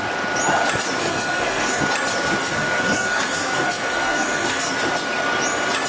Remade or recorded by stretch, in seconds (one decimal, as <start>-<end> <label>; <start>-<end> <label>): 0.0-1.0 recorded; 1.0-1.8 remade; 1.8-2.4 recorded; 2.4-4.7 remade; 4.7-5.9 recorded